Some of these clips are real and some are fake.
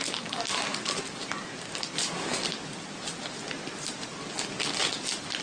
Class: real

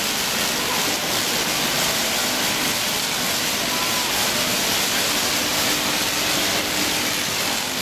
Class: real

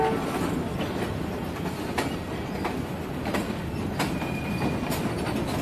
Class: real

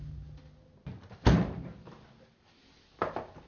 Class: real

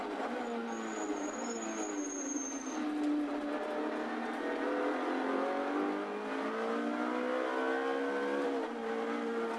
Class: real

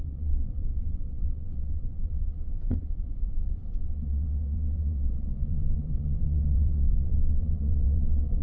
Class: fake